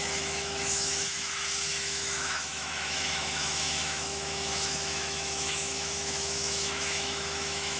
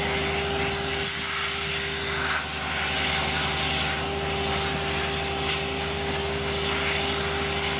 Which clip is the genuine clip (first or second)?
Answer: second